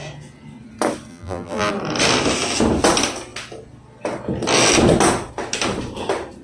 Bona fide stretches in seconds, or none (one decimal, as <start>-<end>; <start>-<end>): 0.0-1.1; 1.7-6.4